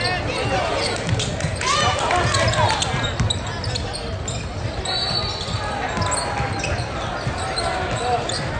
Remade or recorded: recorded